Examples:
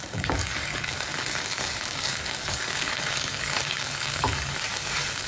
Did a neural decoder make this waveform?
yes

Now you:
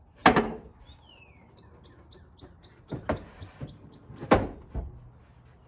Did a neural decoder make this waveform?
no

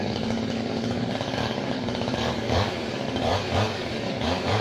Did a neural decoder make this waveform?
yes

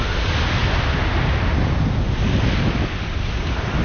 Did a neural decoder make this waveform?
no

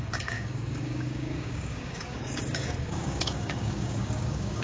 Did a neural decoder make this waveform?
yes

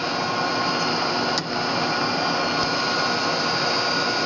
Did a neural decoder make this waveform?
no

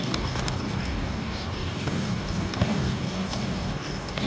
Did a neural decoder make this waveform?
yes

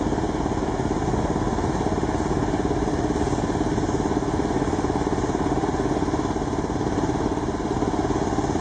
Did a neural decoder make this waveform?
no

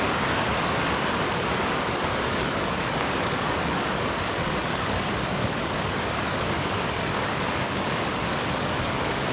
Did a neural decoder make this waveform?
yes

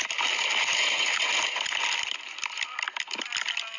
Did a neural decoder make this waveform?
no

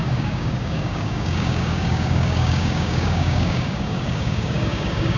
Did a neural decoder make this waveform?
yes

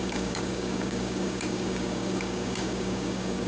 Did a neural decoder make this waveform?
yes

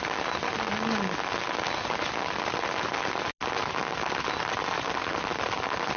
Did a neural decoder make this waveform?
no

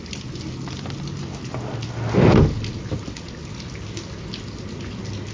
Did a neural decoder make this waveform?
no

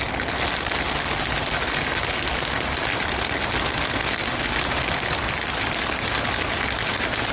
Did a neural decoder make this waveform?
no